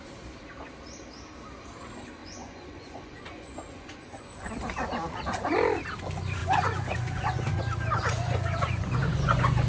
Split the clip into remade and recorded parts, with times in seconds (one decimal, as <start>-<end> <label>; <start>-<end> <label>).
0.0-2.2 recorded; 2.2-4.5 remade; 4.5-6.4 recorded; 6.4-7.6 remade; 7.6-8.0 recorded; 8.0-9.7 remade